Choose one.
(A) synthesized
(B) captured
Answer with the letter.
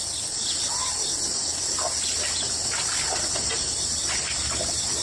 B